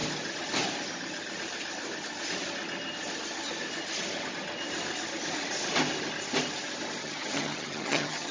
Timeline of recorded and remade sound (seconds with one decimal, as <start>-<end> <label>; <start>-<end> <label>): 0.0-7.0 recorded; 7.0-8.3 remade